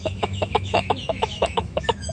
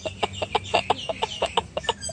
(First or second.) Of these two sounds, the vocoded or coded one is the first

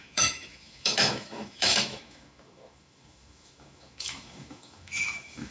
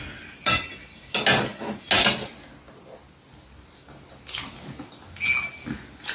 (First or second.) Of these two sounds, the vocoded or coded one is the first